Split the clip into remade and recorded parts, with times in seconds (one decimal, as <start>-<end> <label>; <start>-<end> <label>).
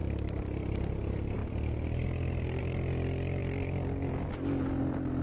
0.0-5.2 recorded